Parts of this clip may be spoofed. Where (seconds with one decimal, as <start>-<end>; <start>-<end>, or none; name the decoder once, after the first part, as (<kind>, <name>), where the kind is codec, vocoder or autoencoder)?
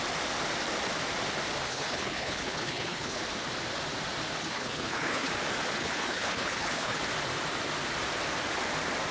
1.7-3.2 (codec, HILCodec); 4.4-5.3; 5.8-7.0